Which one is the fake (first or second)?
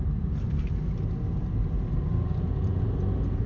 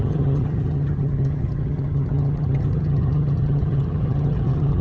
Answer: second